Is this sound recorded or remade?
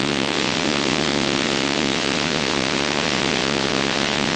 remade